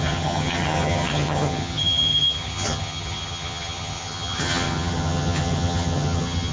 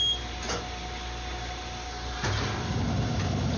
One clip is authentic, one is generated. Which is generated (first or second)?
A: first